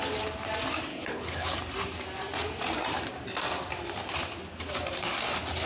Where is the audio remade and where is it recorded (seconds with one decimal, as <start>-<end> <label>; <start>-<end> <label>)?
0.0-0.9 recorded; 0.9-1.6 remade; 1.6-5.7 recorded